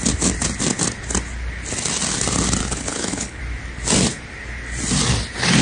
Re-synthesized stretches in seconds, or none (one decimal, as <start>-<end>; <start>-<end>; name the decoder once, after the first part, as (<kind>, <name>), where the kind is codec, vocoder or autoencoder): 2.6-3.4 (codec, HILCodec)